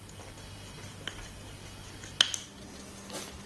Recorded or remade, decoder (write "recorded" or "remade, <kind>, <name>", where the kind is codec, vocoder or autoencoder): recorded